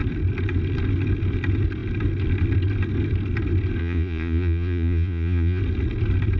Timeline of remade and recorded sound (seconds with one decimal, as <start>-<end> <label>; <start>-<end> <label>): 0.0-3.8 recorded; 3.8-5.6 remade; 5.6-6.4 recorded